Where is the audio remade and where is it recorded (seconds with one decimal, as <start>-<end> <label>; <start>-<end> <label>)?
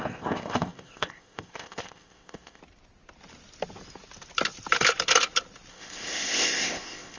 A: 0.0-2.6 remade; 2.6-5.7 recorded; 5.7-7.2 remade